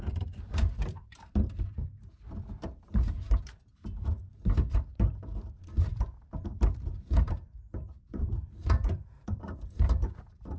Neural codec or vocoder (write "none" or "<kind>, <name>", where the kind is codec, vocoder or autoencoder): vocoder, BigVGAN v2